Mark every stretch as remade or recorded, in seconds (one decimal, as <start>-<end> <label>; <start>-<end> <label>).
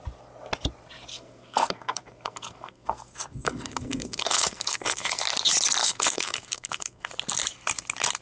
0.0-1.1 recorded; 1.1-5.2 remade; 5.2-5.8 recorded; 5.8-7.1 remade; 7.1-8.2 recorded